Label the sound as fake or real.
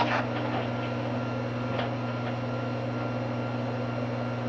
real